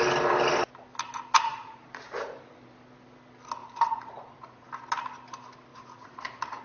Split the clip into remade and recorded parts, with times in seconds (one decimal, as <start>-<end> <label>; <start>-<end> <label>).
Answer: 0.0-1.5 recorded; 1.5-2.5 remade; 2.5-3.6 recorded; 3.6-4.7 remade; 4.7-5.7 recorded; 5.7-6.6 remade